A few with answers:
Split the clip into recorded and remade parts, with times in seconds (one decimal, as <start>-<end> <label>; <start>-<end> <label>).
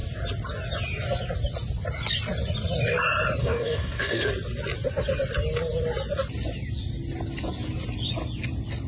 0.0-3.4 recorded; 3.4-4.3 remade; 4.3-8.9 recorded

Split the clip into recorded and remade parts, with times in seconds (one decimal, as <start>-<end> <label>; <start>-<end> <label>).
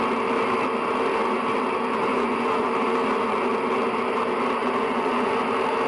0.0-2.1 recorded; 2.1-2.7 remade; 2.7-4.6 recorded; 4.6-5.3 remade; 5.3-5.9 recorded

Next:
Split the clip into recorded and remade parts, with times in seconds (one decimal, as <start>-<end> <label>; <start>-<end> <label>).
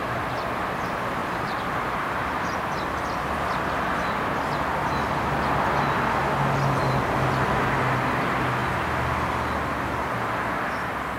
0.0-1.2 recorded; 1.2-3.0 remade; 3.0-11.2 recorded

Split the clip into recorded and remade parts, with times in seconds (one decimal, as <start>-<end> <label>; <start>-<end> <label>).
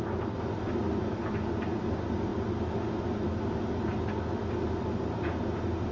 0.0-5.9 recorded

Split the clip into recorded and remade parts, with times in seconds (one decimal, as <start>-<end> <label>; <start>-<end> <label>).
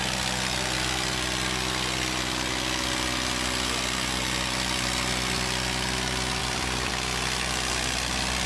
0.0-6.4 recorded; 6.4-6.9 remade; 6.9-8.5 recorded